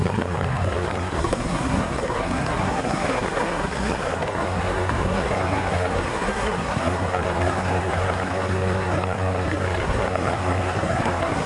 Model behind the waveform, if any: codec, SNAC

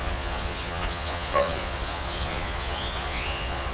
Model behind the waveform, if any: vocoder, Vocos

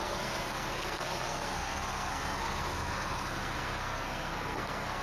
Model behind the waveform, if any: codec, SNAC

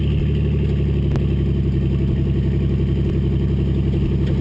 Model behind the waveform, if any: none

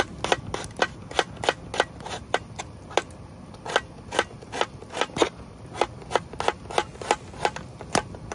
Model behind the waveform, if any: none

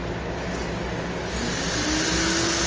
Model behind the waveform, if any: none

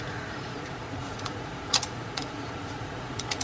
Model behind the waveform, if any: vocoder, Vocos